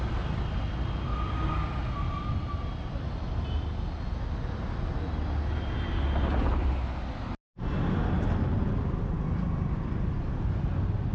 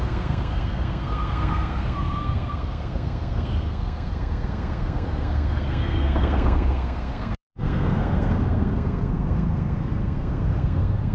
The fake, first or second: second